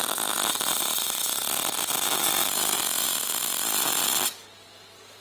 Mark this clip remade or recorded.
recorded